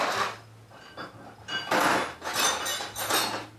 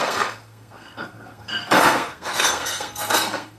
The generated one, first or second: second